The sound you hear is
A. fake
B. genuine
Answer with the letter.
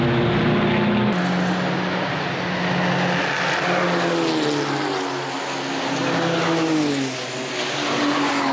B